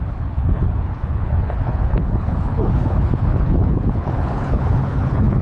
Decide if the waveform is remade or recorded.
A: remade